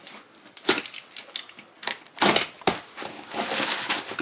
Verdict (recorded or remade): recorded